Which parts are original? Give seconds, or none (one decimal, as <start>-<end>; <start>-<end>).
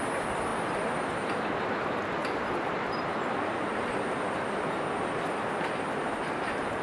0.0-0.5; 1.7-2.2; 2.7-6.8